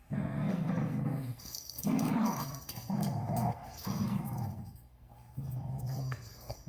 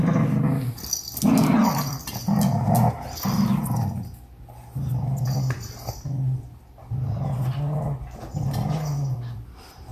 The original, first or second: second